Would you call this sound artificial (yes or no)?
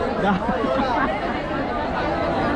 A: no